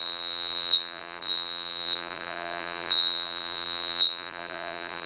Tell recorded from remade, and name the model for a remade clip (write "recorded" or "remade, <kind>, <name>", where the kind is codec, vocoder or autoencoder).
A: remade, vocoder, BigVGAN v2